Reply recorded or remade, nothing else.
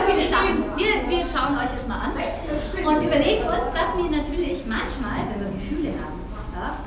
recorded